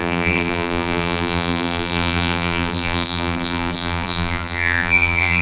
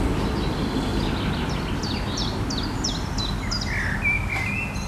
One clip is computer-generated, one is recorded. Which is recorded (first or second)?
second